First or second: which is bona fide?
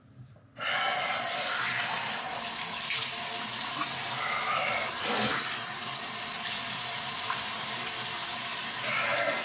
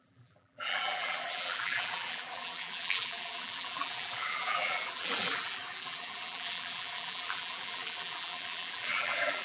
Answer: first